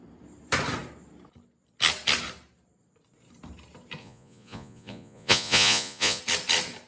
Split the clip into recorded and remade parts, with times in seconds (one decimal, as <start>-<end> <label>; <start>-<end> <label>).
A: 0.0-4.0 recorded; 4.0-6.2 remade; 6.2-6.9 recorded